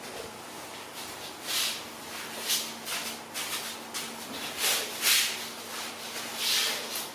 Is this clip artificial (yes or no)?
no